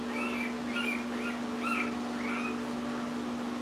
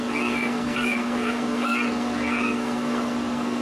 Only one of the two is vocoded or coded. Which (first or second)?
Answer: second